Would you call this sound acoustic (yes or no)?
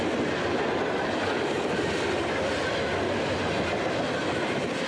yes